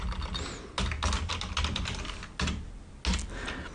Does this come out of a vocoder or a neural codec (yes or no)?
no